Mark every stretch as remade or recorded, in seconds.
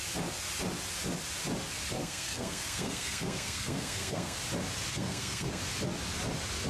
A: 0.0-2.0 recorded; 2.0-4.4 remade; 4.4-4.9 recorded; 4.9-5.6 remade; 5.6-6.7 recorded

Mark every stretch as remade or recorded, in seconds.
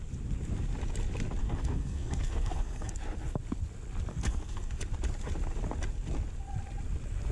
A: 0.0-1.4 recorded; 1.4-2.9 remade; 2.9-4.1 recorded; 4.1-4.8 remade; 4.8-7.3 recorded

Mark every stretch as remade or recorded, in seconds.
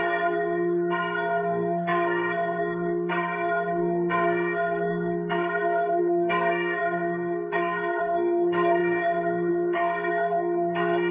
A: 0.0-11.1 remade